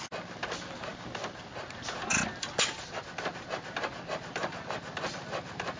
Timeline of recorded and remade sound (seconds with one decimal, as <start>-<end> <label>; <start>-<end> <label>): 0.0-5.8 recorded